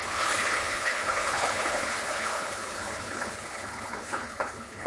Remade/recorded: remade